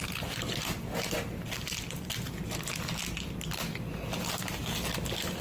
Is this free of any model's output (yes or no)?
yes